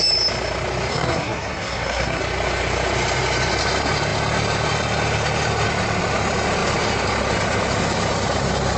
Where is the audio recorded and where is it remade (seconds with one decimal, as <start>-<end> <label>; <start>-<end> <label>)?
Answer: 0.0-0.9 recorded; 0.9-2.2 remade; 2.2-8.8 recorded